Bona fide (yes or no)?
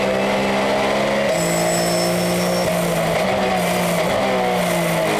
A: yes